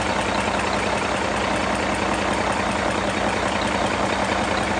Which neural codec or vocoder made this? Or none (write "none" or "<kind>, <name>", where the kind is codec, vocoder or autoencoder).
none